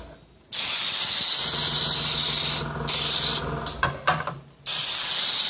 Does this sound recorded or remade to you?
recorded